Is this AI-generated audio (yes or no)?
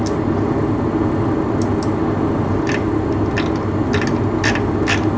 no